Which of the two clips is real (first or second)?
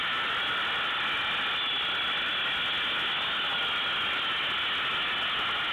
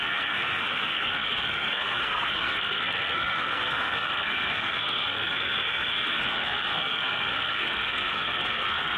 first